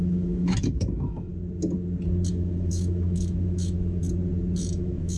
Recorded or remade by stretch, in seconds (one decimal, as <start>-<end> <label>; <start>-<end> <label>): 0.0-1.3 remade; 1.3-2.3 recorded; 2.3-4.0 remade; 4.0-4.6 recorded; 4.6-5.2 remade